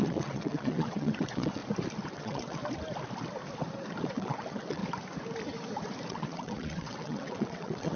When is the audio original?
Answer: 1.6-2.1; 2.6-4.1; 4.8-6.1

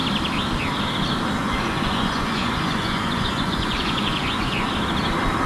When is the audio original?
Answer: 0.0-1.4; 4.7-5.5